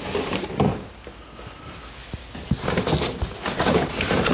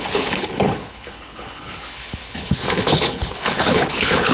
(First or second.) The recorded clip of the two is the first